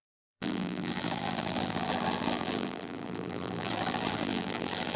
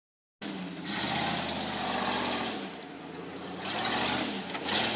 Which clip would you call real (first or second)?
second